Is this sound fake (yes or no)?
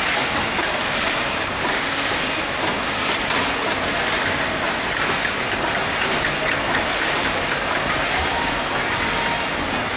no